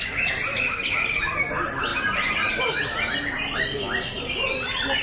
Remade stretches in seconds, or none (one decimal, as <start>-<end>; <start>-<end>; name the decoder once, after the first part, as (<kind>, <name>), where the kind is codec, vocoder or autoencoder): none

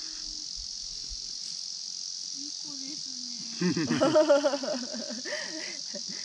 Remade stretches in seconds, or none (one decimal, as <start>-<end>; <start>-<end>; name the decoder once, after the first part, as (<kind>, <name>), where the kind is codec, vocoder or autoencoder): none